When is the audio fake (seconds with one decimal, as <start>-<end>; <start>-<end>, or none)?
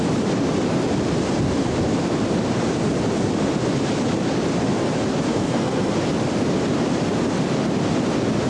5.3-5.9